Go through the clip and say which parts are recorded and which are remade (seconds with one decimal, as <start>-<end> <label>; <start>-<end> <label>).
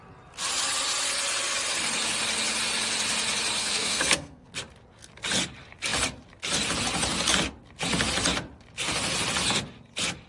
0.0-3.6 recorded; 3.6-4.5 remade; 4.5-10.3 recorded